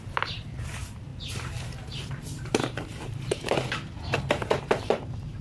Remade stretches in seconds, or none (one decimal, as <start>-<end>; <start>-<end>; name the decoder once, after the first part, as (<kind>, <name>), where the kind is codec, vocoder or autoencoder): 0.0-5.4 (vocoder, BigVGAN v2)